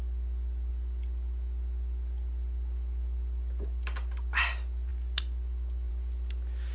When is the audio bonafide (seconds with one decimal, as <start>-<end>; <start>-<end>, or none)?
0.0-6.7